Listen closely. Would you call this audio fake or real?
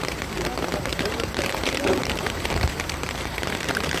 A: fake